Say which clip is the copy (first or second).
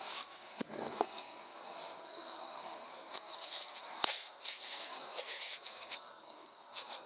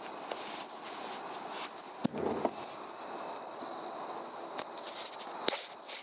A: first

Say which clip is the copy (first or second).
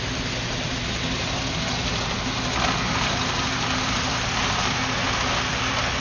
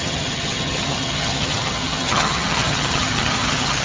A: second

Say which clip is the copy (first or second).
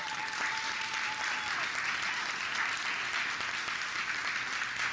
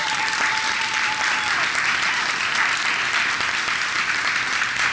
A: second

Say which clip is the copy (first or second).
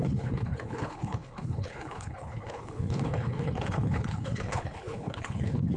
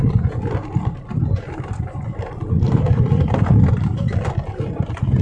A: first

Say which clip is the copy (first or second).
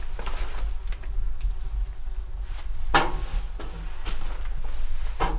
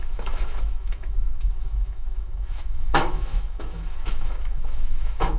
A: second